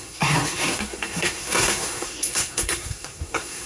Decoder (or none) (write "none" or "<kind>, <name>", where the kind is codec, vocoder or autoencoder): codec, SNAC